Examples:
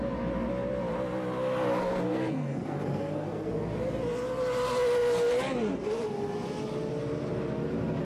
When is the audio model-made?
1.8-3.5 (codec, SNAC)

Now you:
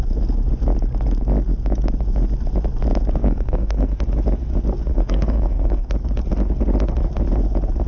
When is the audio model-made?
3.2-3.9 (codec, SNAC); 4.9-5.9

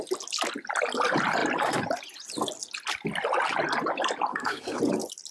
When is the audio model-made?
4.3-4.8 (codec, SNAC)

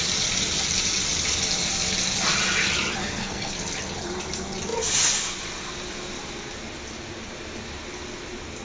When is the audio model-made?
3.0-3.5 (codec, SNAC)

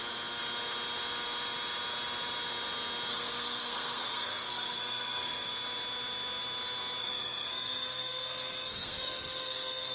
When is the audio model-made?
3.1-5.5 (codec, SNAC); 7.0-9.9

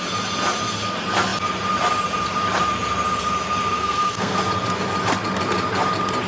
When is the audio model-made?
3.8-4.4 (codec, SNAC)